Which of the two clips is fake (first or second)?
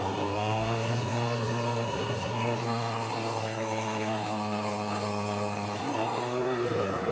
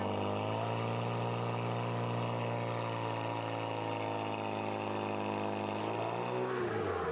first